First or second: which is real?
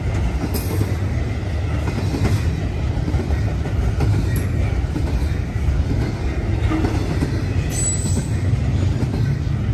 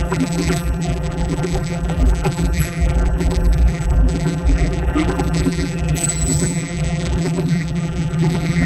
first